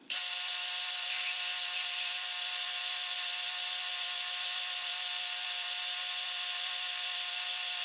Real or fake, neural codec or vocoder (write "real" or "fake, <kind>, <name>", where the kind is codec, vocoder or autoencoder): fake, vocoder, BigVGAN v2